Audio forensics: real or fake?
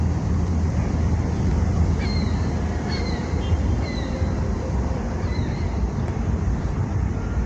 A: fake